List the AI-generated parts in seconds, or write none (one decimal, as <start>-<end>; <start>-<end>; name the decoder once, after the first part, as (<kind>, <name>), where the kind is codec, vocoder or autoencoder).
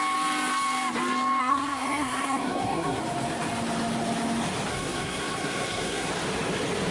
1.4-3.0 (codec, SNAC); 4.7-6.1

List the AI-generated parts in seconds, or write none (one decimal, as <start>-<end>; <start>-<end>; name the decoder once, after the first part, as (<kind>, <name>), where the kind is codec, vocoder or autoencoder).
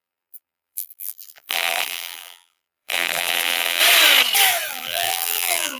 0.0-3.8 (vocoder, BigVGAN v2); 4.7-5.8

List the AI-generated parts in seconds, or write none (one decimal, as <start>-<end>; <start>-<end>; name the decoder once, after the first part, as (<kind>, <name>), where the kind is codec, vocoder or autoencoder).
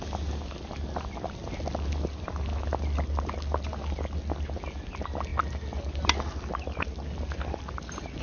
none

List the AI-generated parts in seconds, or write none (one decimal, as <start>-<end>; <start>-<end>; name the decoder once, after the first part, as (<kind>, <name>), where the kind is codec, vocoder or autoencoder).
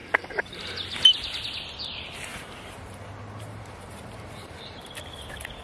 0.0-0.7 (vocoder, BigVGAN v2); 2.3-5.0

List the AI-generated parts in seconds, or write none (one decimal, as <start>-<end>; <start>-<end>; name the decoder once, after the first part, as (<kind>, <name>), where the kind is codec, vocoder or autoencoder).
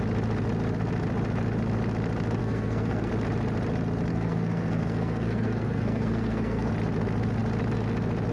2.4-3.1 (codec, SNAC); 4.1-6.7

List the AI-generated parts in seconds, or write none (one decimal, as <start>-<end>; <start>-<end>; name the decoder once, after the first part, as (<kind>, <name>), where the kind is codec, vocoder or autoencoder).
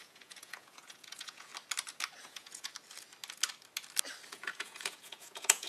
0.0-1.5 (vocoder, Vocos); 2.2-2.7; 4.3-5.7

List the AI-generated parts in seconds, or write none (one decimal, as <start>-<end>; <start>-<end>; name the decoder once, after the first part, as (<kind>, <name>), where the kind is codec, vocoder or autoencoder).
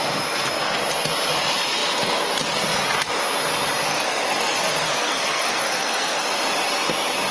3.9-6.2 (codec, SNAC)